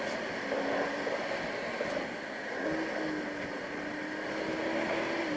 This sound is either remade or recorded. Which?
recorded